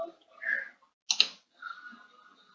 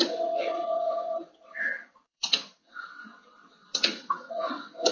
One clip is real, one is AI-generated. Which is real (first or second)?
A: first